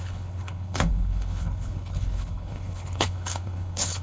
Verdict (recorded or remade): remade